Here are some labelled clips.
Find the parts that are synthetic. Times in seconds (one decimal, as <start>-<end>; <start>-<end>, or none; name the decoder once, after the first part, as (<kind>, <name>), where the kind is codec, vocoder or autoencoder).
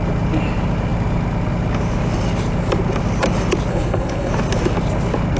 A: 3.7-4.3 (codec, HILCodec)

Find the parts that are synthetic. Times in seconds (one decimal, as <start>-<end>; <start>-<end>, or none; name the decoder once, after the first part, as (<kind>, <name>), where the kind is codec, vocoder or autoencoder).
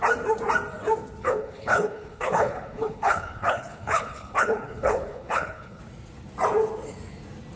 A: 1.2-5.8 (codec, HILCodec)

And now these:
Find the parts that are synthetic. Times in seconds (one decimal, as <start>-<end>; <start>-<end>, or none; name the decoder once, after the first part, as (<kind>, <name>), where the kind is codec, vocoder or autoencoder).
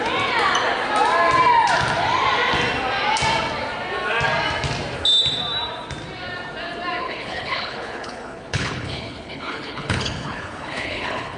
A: 7.0-11.4 (codec, HILCodec)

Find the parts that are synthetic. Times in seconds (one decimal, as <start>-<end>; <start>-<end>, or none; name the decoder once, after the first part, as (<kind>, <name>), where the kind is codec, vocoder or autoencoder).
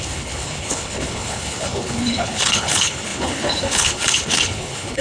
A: 0.0-5.0 (codec, HILCodec)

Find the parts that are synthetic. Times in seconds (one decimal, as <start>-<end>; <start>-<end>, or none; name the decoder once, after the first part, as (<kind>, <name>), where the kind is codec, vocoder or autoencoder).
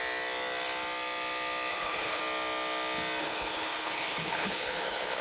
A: 1.7-2.2 (codec, HILCodec); 3.2-5.2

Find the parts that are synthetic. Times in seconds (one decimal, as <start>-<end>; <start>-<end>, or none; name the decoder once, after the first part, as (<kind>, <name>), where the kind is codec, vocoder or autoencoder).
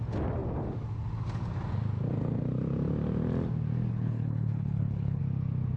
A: 3.9-5.2 (codec, HILCodec)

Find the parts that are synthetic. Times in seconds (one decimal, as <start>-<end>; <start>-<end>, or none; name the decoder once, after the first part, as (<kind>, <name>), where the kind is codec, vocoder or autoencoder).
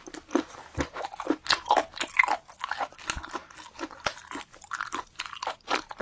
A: none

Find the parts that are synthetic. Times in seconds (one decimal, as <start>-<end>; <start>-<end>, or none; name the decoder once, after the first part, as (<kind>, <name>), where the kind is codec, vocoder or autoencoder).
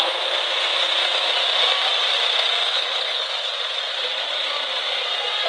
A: 2.6-3.3 (codec, HILCodec)